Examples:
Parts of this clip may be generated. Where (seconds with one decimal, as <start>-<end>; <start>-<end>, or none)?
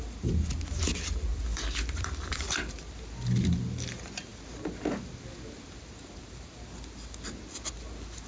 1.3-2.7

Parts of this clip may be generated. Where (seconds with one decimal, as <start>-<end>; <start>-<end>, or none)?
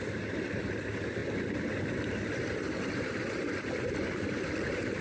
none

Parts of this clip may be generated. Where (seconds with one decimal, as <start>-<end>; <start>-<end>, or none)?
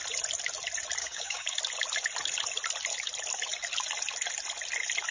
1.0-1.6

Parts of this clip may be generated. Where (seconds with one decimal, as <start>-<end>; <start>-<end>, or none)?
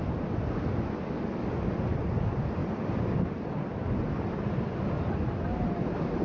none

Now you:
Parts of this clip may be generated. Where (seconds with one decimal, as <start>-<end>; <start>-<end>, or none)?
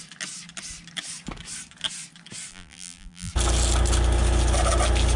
2.5-3.3